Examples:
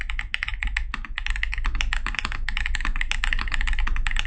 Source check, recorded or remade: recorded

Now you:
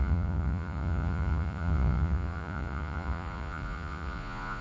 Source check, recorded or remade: remade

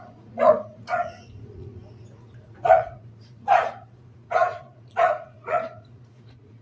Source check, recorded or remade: remade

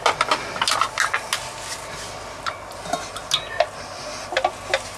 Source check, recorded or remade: recorded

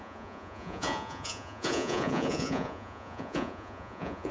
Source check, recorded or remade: remade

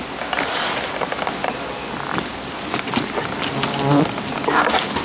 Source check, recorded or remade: recorded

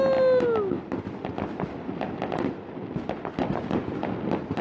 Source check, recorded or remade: recorded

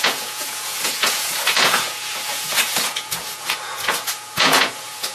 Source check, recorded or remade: remade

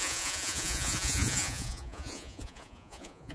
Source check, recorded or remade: remade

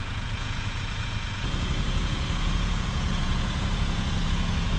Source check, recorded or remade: remade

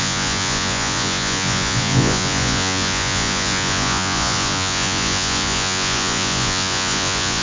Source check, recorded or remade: remade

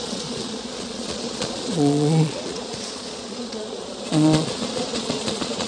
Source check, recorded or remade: remade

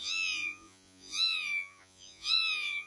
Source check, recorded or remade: remade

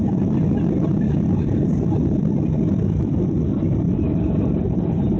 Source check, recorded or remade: recorded